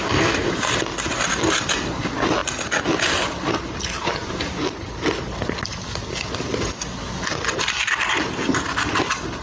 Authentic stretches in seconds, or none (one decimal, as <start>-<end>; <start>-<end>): 0.5-9.4